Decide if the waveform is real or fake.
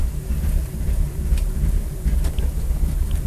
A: fake